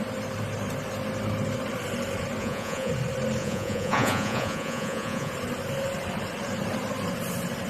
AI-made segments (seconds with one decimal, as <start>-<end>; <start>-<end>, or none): 2.4-2.9; 3.4-5.3